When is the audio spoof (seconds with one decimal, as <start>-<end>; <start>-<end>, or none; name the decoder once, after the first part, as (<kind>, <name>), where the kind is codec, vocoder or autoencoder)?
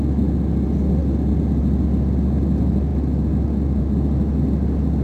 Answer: none